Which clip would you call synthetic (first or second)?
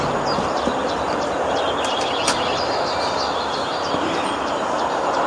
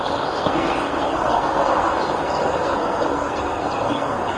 second